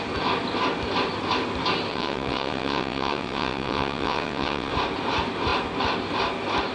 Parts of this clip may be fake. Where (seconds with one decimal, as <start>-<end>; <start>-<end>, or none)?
1.9-4.7